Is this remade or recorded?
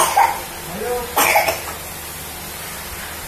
recorded